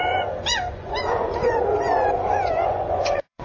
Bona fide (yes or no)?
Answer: no